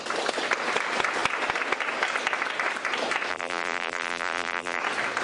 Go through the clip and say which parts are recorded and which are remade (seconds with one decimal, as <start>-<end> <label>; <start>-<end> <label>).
0.0-3.3 recorded; 3.3-4.8 remade; 4.8-5.2 recorded